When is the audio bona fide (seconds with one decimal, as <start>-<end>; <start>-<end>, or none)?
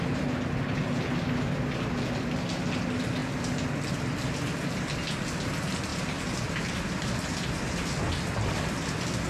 0.0-9.3